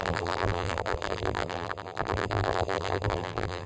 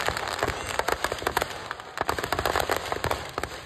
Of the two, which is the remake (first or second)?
first